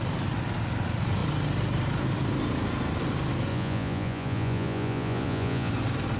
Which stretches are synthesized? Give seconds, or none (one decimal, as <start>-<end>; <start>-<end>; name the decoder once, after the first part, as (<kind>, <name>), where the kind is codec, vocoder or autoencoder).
3.5-5.7 (vocoder, Vocos)